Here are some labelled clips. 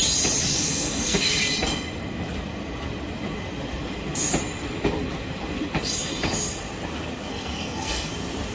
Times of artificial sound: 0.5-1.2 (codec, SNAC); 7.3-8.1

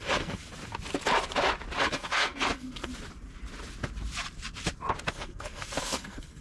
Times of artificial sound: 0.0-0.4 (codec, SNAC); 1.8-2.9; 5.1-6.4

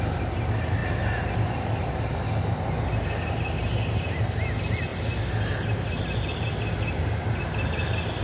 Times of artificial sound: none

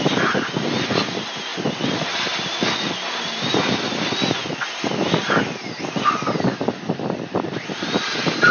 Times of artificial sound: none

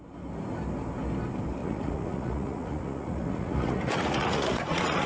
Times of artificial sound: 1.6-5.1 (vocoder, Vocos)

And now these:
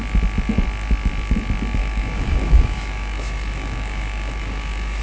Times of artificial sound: 1.8-5.0 (autoencoder, DAC-VAE)